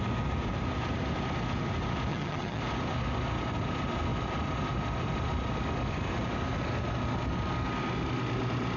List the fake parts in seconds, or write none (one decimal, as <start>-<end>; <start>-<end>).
2.1-2.6